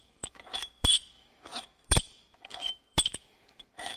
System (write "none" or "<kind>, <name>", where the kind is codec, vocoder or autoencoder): autoencoder, DAC-VAE